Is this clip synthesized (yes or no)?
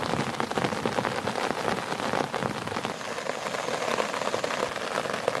no